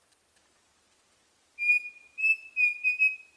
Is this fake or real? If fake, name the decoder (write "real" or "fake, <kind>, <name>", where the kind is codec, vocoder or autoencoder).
real